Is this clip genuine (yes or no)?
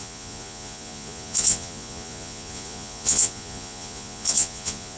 no